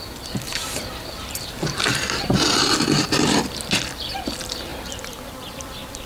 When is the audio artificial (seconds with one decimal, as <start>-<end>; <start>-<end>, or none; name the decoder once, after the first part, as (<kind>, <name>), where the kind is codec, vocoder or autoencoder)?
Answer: 0.5-4.2 (vocoder, BigVGAN v2); 4.7-6.1